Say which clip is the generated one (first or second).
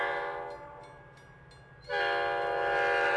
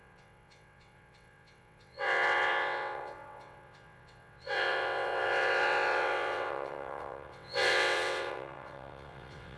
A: second